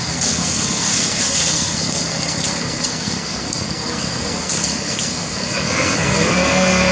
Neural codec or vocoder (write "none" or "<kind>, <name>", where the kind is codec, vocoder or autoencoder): codec, SNAC